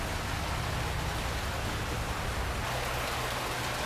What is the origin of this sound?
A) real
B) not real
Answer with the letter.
A